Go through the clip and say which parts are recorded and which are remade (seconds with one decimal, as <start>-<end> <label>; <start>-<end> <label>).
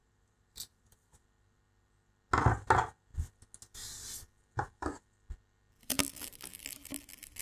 0.0-1.2 remade; 1.2-7.4 recorded